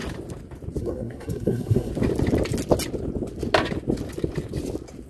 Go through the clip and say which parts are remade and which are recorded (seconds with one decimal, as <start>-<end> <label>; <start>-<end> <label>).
0.0-0.8 recorded; 0.8-1.9 remade; 1.9-5.1 recorded